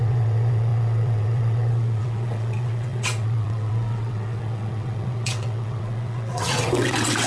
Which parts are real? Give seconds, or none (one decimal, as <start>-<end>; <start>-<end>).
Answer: none